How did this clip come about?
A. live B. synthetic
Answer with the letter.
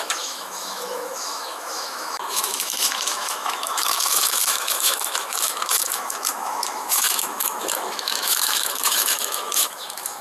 B